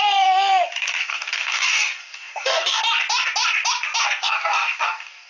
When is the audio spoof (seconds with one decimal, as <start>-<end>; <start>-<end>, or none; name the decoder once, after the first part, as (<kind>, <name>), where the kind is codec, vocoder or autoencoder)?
1.0-2.8 (codec, DAC); 4.0-5.3